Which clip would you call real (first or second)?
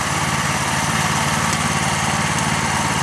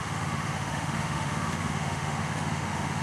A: first